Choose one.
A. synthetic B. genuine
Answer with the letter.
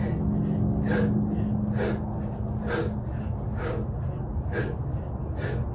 B